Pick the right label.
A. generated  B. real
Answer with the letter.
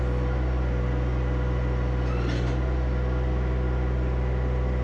B